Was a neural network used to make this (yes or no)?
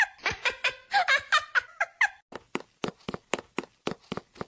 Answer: no